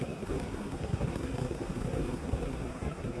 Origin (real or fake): fake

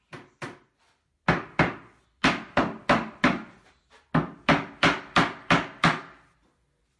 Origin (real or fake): real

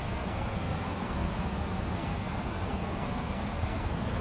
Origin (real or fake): fake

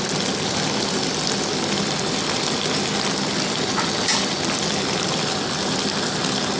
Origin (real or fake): real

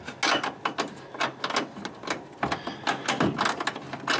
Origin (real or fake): real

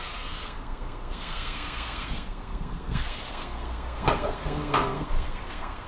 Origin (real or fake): fake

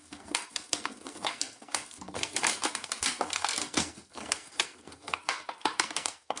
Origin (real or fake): fake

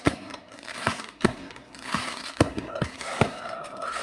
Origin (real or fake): fake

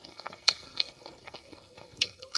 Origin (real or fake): fake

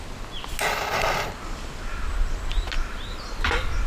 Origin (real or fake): real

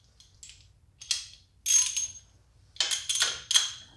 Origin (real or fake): real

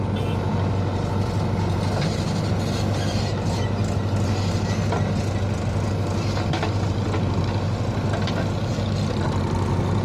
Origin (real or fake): real